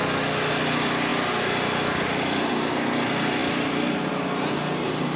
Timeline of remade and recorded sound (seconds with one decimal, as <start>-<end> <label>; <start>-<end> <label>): 0.0-5.2 recorded